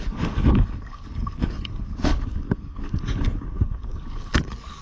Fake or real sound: fake